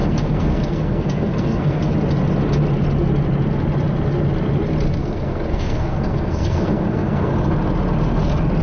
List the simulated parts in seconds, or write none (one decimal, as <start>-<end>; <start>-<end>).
0.0-1.9; 5.0-7.3

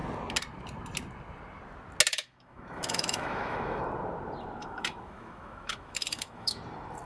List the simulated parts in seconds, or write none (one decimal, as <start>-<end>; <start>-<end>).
2.1-3.8; 4.6-6.6